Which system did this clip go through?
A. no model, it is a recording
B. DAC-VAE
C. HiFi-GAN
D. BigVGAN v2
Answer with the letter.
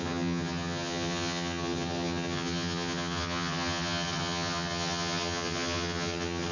C